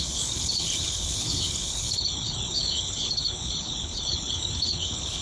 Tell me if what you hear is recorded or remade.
remade